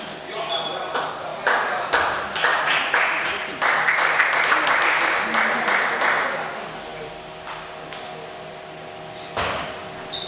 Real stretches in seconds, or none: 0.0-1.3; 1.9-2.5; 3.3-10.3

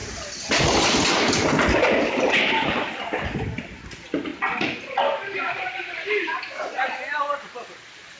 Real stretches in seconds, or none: 0.0-8.2

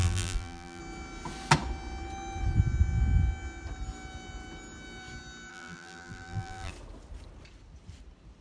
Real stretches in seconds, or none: 0.8-5.5; 6.7-8.4

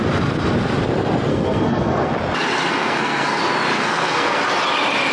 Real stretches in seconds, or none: 0.0-1.3; 2.1-2.7; 3.4-3.8; 4.4-5.1

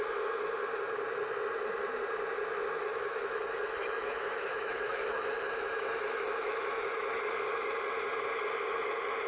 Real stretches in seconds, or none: 0.0-2.9; 7.3-9.3

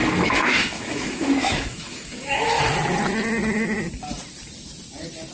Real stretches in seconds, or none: 2.6-5.3

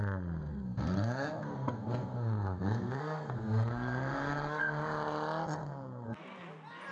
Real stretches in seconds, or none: 0.0-0.5; 4.6-5.6; 6.2-6.9